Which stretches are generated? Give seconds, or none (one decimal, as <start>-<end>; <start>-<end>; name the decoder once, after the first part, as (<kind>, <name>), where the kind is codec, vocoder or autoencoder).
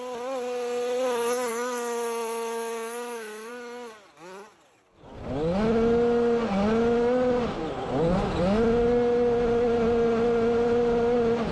1.5-3.5 (autoencoder, DAC-VAE)